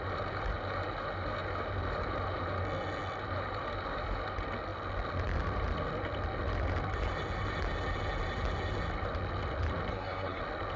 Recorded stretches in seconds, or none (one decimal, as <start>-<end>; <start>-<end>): 0.0-9.9; 10.4-10.8